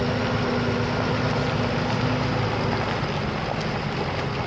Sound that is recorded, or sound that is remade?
recorded